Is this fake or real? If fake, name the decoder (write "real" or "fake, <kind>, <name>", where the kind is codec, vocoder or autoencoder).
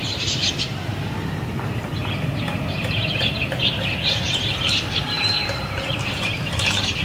fake, vocoder, BigVGAN v2